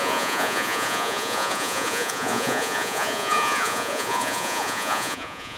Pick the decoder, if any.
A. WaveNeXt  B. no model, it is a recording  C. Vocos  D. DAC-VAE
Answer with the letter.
C